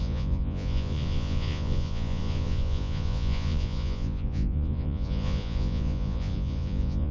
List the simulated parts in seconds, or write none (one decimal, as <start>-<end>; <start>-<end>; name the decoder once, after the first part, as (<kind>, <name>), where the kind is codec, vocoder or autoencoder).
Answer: 0.0-7.1 (vocoder, Vocos)